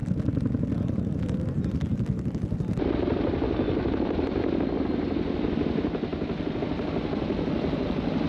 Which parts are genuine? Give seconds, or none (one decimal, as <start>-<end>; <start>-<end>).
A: 0.0-8.3